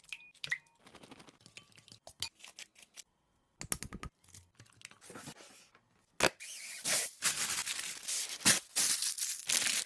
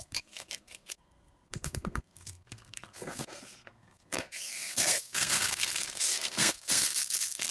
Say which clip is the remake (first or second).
second